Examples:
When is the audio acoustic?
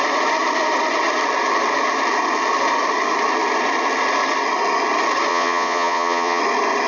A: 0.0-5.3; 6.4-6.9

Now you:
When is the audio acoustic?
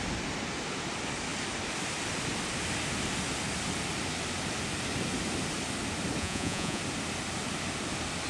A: 0.0-6.2; 6.8-8.3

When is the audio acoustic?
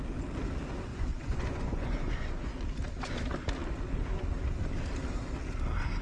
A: 0.0-0.9; 2.5-6.0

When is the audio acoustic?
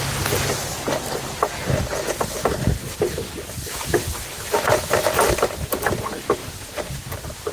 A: 0.0-7.5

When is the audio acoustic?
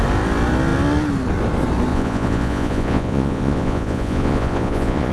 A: 0.0-1.9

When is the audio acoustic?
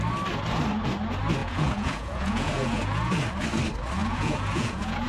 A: 0.0-1.4; 3.1-4.0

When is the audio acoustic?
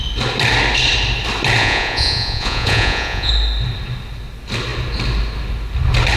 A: 0.0-1.6; 3.3-6.2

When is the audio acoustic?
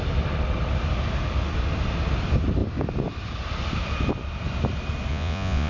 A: 0.0-5.1